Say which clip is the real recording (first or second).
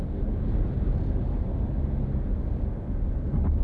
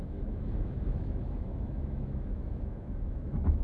first